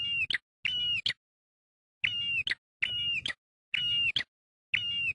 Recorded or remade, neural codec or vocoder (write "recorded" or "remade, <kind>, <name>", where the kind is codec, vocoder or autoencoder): recorded